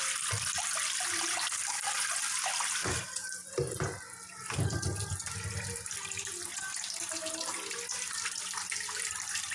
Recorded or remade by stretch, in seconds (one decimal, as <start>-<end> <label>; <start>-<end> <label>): 0.0-9.5 recorded